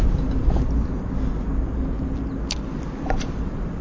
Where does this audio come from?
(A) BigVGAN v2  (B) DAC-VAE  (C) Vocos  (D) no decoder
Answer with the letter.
D